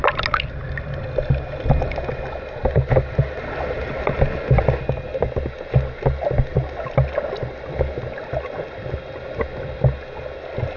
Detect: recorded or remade recorded